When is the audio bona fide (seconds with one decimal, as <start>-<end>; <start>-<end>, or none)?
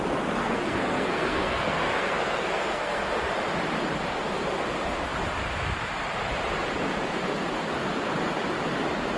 0.0-0.4; 3.0-9.2